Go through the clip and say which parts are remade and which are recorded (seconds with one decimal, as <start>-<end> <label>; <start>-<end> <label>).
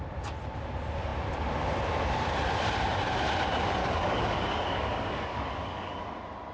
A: 0.0-3.8 recorded; 3.8-5.9 remade; 5.9-6.5 recorded